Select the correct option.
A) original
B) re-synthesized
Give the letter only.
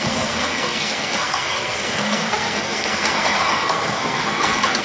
B